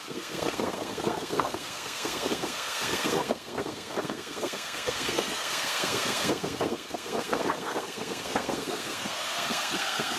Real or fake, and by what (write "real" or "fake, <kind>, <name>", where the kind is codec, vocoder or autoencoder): fake, codec, SNAC